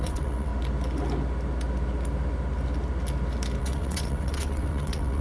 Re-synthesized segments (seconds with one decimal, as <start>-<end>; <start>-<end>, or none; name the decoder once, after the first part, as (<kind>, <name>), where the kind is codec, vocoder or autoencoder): 0.0-0.5 (vocoder, WaveNeXt); 3.6-5.2